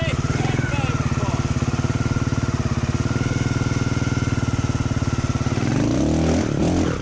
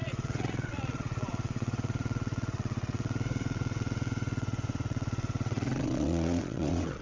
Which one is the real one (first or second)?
first